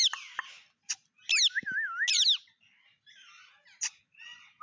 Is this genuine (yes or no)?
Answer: yes